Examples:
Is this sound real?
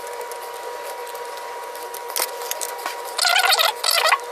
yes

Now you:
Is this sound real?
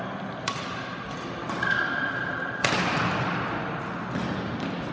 yes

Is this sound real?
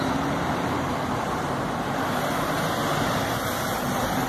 yes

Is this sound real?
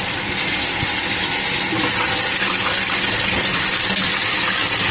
yes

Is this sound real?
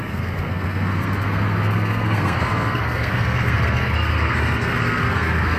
no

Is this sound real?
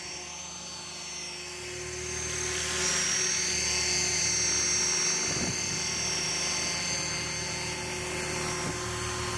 yes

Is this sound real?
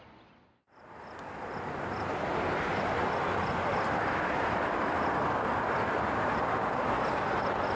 yes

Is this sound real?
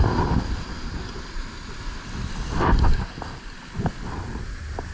yes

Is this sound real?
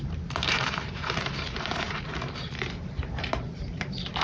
no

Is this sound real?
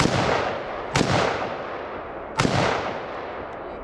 yes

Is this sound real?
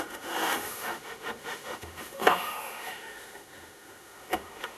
no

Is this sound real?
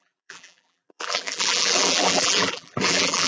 no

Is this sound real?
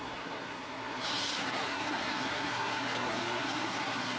no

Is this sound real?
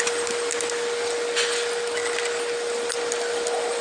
yes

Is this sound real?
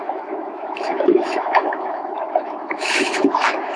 no